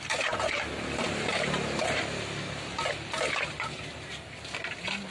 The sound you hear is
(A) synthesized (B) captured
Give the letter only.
B